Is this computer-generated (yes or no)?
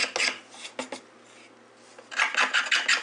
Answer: no